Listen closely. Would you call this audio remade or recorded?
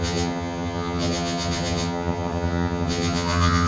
remade